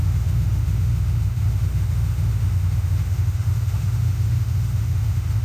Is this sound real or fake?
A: fake